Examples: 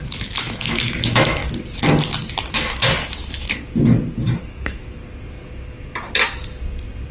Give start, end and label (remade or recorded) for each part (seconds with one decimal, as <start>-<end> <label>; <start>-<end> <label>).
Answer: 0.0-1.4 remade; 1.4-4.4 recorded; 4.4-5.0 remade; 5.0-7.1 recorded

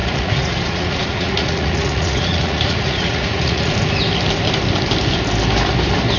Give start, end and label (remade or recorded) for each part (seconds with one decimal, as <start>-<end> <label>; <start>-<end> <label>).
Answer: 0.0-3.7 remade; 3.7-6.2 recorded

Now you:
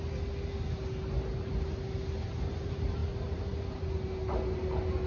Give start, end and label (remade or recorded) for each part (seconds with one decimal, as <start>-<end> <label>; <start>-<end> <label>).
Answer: 0.0-5.1 recorded

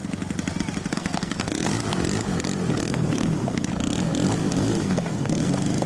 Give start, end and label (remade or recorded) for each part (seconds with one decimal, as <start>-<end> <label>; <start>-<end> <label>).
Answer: 0.0-0.9 recorded; 0.9-1.7 remade; 1.7-2.7 recorded; 2.7-3.7 remade; 3.7-4.5 recorded; 4.5-5.9 remade

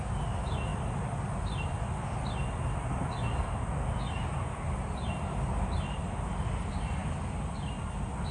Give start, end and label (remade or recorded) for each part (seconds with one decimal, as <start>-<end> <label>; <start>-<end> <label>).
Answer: 0.0-8.3 recorded